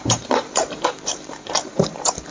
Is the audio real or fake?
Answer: fake